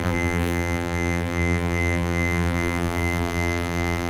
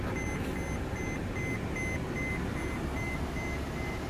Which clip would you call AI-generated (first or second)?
first